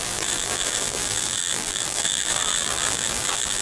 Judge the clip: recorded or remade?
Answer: remade